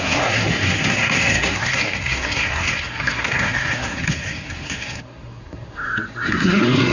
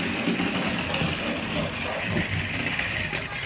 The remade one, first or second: first